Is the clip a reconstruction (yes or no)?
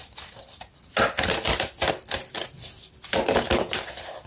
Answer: no